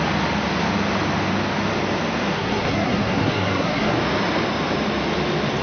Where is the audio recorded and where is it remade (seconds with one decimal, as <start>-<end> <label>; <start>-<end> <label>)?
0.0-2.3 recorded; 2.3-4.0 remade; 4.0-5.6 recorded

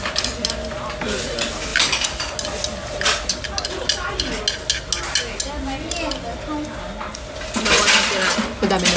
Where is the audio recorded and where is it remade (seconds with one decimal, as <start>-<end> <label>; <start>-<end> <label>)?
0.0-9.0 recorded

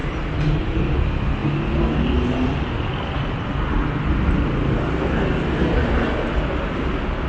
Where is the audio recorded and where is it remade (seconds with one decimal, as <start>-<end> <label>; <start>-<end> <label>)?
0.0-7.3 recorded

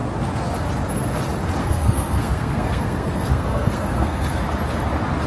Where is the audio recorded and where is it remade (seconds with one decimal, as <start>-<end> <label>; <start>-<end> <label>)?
0.0-1.6 recorded; 1.6-4.4 remade; 4.4-5.3 recorded

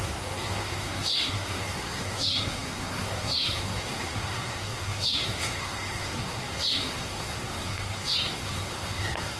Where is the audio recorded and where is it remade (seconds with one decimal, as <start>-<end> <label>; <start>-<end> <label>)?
0.0-9.4 remade

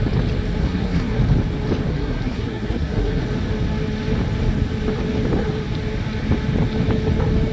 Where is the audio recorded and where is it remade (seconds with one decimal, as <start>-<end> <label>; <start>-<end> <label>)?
0.0-0.6 recorded; 0.6-1.2 remade; 1.2-1.9 recorded; 1.9-3.2 remade; 3.2-7.5 recorded

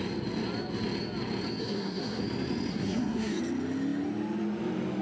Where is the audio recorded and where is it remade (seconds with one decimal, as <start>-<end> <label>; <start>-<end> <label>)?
0.0-1.6 recorded; 1.6-2.2 remade; 2.2-2.7 recorded; 2.7-3.4 remade; 3.4-5.0 recorded

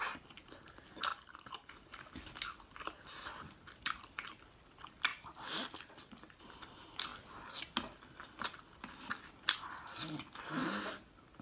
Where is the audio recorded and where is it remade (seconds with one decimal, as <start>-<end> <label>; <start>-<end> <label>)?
0.0-11.4 recorded